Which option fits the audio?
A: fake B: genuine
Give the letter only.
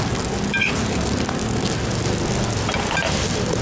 B